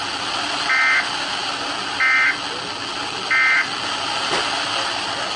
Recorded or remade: recorded